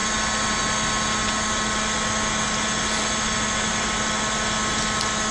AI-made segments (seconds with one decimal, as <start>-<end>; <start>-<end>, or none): none